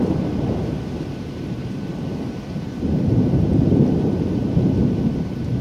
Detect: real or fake fake